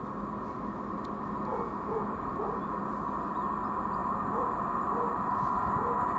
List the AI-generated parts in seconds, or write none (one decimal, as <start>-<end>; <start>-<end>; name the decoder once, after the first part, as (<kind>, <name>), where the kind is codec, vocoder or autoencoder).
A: none